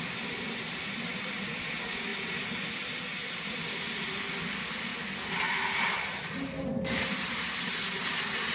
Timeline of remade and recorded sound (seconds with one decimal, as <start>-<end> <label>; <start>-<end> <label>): 0.0-2.1 remade; 2.1-3.3 recorded; 3.3-4.9 remade; 4.9-6.9 recorded; 6.9-8.5 remade

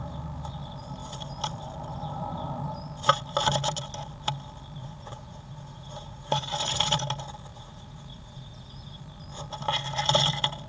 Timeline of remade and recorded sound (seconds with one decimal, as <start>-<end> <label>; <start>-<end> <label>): 0.0-4.8 recorded; 4.8-6.4 remade; 6.4-7.5 recorded; 7.5-9.0 remade; 9.0-10.7 recorded

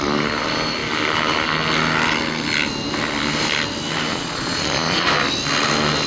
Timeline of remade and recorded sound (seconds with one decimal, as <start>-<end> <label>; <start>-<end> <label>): 0.0-4.1 recorded; 4.1-5.1 remade; 5.1-6.1 recorded